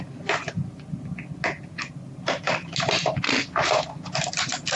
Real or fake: real